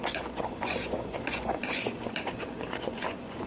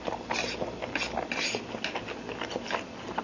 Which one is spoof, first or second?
first